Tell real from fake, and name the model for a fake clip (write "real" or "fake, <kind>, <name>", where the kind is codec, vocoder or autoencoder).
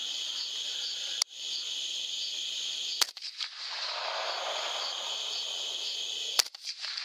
real